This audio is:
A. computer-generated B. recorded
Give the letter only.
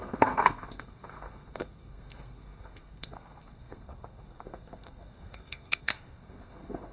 A